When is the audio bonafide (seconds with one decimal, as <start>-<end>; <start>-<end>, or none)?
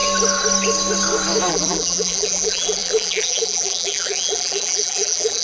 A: 0.0-1.5